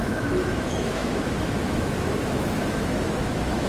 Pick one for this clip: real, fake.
fake